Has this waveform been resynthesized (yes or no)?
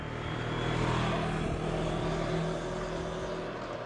no